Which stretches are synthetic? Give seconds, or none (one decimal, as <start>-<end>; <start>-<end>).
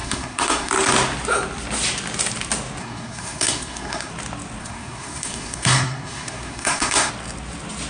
0.0-0.7; 2.8-4.1; 4.6-7.1